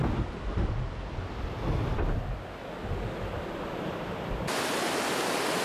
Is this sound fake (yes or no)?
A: no